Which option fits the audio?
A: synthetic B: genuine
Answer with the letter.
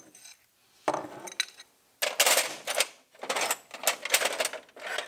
B